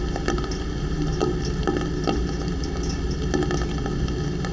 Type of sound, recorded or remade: recorded